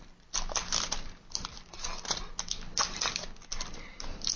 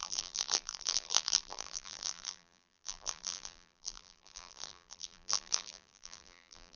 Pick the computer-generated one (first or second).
second